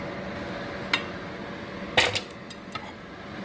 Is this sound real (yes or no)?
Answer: yes